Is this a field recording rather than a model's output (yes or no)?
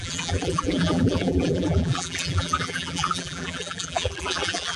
no